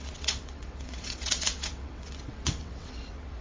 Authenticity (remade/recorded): remade